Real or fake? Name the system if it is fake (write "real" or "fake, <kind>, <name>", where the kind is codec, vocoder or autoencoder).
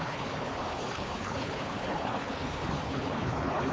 fake, codec, HILCodec